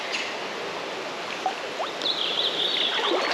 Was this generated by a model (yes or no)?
no